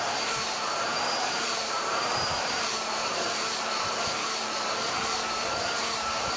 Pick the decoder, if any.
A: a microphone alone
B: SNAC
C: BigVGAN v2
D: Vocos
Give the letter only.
C